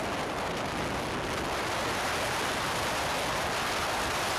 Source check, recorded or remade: recorded